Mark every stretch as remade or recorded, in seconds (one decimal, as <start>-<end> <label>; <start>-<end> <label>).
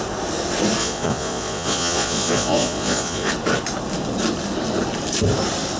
0.0-0.8 recorded; 0.8-3.3 remade; 3.3-5.8 recorded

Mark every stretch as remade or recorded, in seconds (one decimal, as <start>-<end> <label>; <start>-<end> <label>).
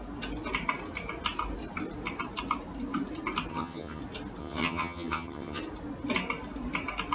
0.0-3.5 recorded; 3.5-4.0 remade; 4.0-4.4 recorded; 4.4-5.6 remade; 5.6-7.1 recorded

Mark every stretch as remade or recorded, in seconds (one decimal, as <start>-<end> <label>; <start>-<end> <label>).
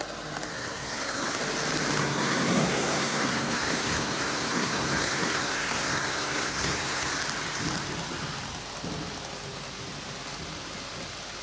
0.0-0.5 recorded; 0.5-1.4 remade; 1.4-2.0 recorded; 2.0-7.1 remade; 7.1-11.4 recorded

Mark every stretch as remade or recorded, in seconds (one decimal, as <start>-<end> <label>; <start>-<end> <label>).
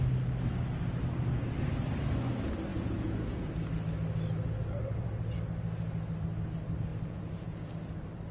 0.0-2.7 recorded; 2.7-3.5 remade; 3.5-6.9 recorded; 6.9-7.7 remade; 7.7-8.3 recorded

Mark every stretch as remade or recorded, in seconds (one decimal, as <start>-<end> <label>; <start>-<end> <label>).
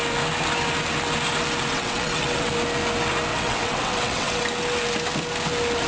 0.0-1.7 recorded; 1.7-2.5 remade; 2.5-3.3 recorded; 3.3-4.4 remade; 4.4-5.9 recorded